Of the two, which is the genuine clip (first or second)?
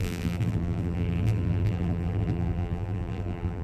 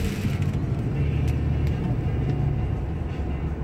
second